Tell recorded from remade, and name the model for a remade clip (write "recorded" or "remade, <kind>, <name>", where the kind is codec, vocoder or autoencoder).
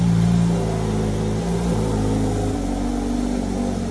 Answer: recorded